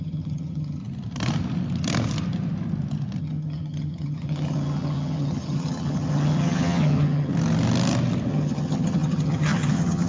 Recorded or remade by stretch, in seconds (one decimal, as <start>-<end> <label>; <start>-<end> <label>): 0.0-0.8 remade; 0.8-3.2 recorded; 3.2-7.3 remade; 7.3-8.3 recorded; 8.3-10.1 remade